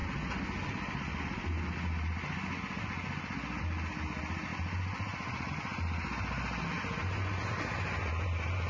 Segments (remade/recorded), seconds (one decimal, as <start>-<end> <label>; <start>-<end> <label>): 0.0-8.7 recorded